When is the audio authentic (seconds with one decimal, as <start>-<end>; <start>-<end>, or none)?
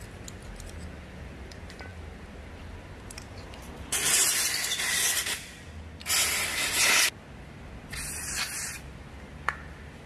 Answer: 0.0-10.1